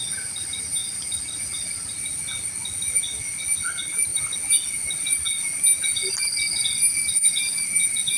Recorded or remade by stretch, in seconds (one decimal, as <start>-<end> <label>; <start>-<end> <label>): 0.0-8.2 recorded